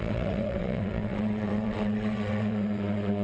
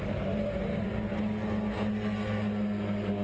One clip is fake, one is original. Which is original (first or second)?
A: second